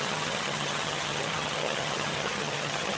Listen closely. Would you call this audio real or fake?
fake